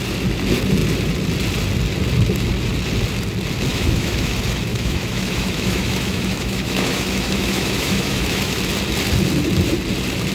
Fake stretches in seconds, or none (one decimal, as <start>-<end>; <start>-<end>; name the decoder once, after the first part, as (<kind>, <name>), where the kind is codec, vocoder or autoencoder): 3.7-4.3 (autoencoder, DAC-VAE); 4.7-8.6